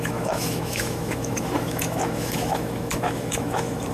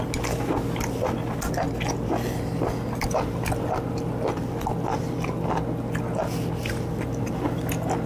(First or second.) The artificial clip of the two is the first